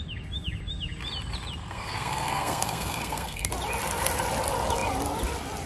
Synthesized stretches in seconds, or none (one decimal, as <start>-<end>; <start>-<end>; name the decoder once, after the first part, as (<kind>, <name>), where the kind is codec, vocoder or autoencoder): 1.6-3.5 (codec, SNAC)